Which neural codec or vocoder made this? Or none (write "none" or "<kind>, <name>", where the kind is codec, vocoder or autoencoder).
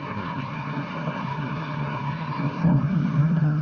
codec, SNAC